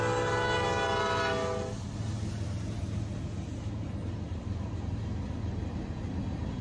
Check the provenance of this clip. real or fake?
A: real